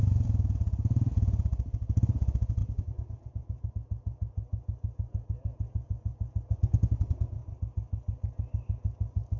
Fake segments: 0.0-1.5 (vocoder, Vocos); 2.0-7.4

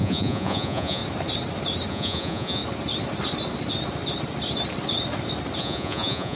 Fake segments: 0.0-1.0 (vocoder, Vocos); 1.9-2.6; 5.6-6.4

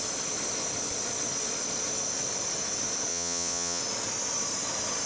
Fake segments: 3.1-3.8 (vocoder, Vocos)

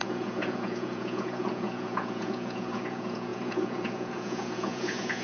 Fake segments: 0.0-5.2 (vocoder, Vocos)

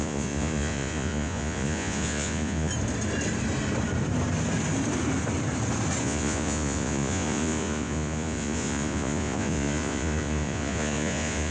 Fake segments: 0.0-2.7 (vocoder, Vocos); 6.0-11.5